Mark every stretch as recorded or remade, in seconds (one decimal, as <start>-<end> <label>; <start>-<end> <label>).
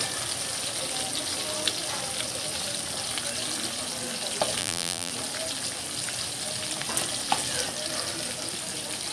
0.0-4.6 recorded; 4.6-5.1 remade; 5.1-9.1 recorded